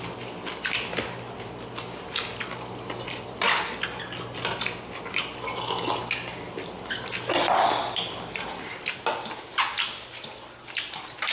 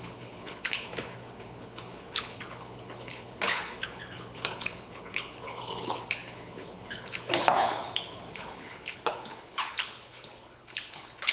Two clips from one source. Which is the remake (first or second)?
second